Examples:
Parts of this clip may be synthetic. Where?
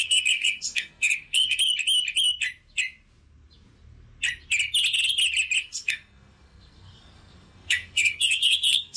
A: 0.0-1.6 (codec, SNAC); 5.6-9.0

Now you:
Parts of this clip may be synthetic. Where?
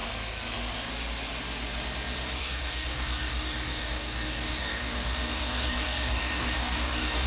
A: 2.4-7.3 (codec, DAC)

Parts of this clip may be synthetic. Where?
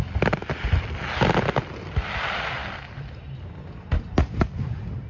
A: none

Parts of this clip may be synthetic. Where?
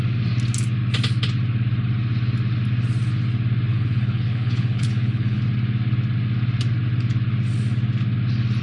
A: 3.7-5.4 (codec, HILCodec)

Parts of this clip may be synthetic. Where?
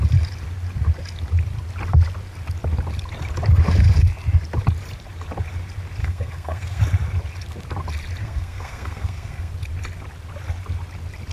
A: 6.0-6.8 (codec, SNAC); 8.2-9.5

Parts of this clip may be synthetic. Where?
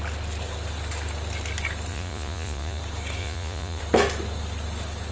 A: 1.9-2.8 (vocoder, Vocos); 3.2-3.8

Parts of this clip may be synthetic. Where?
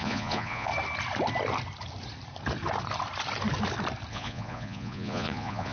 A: 0.0-0.7 (vocoder, Vocos); 4.1-5.7